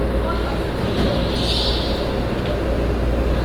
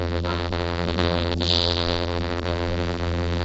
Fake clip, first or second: second